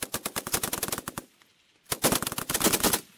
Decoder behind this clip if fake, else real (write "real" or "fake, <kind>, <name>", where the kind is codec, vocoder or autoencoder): real